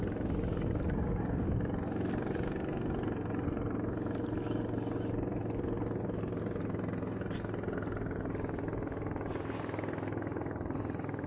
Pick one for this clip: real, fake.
real